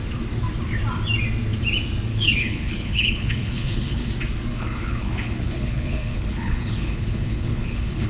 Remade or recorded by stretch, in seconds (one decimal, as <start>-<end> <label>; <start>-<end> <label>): 0.0-2.1 recorded; 2.1-4.1 remade; 4.1-4.5 recorded; 4.5-8.1 remade